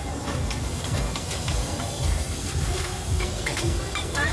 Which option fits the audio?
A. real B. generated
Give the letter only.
B